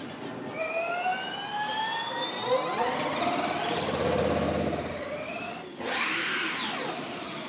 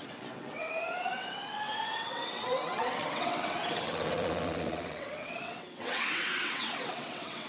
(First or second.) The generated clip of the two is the second